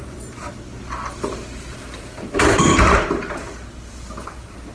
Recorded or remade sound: recorded